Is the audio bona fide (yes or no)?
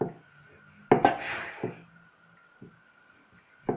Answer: yes